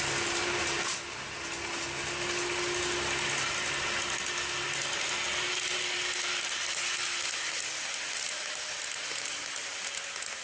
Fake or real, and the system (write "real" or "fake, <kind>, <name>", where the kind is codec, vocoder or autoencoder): real